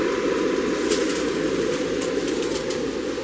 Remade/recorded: recorded